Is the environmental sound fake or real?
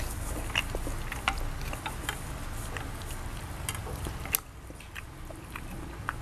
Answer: real